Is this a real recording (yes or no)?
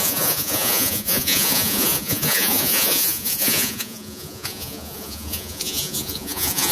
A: no